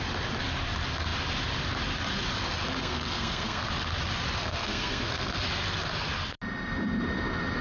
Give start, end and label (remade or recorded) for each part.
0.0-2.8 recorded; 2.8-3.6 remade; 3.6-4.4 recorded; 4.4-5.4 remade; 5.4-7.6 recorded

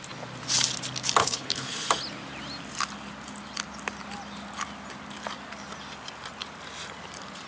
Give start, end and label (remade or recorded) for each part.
0.0-1.2 recorded; 1.2-1.9 remade; 1.9-7.5 recorded

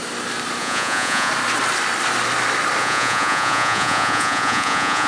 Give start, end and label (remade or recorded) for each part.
0.0-0.6 recorded; 0.6-1.3 remade; 1.3-2.8 recorded; 2.8-5.1 remade

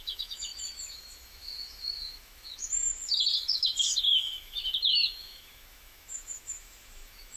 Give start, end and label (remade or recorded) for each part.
0.0-7.4 remade

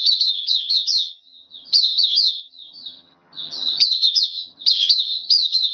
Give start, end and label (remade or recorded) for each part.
0.0-5.7 remade